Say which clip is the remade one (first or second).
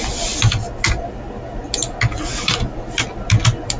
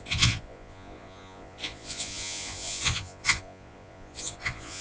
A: second